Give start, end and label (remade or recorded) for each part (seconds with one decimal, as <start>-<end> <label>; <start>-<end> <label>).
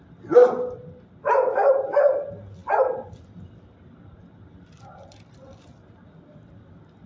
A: 0.0-7.1 recorded